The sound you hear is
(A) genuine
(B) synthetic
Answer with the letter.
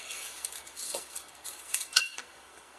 B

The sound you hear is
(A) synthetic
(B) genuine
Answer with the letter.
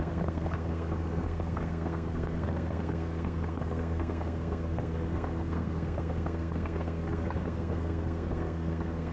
A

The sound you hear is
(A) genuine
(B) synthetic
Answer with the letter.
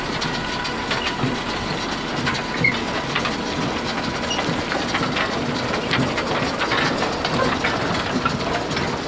A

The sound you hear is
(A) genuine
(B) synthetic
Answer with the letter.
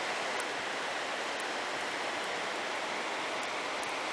A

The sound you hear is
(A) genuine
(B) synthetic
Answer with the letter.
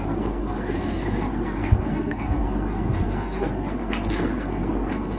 B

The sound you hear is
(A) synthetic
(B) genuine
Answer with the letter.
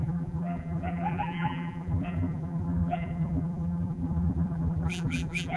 A